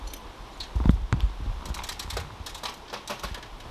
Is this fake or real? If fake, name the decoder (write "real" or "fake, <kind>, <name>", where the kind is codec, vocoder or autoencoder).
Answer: real